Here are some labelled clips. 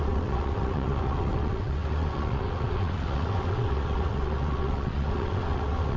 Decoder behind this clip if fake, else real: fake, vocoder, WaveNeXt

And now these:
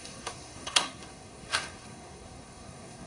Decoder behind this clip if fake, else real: fake, codec, SNAC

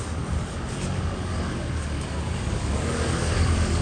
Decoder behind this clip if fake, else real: fake, codec, DAC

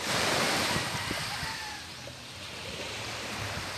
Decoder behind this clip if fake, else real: fake, vocoder, BigVGAN v2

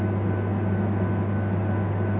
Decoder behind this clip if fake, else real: real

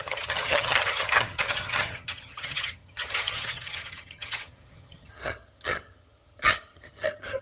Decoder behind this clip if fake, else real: fake, vocoder, HiFi-GAN